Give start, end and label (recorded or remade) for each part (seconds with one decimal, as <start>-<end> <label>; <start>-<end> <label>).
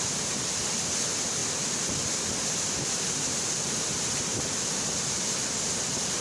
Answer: 0.0-6.2 recorded